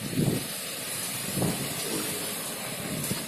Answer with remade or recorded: recorded